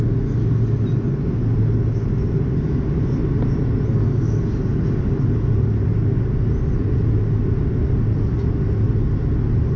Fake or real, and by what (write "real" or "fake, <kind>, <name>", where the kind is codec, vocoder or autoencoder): real